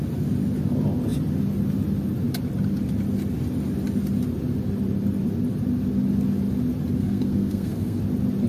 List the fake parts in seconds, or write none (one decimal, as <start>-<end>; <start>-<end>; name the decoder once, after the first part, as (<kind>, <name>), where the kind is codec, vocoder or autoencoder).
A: 7.0-8.0 (codec, SNAC)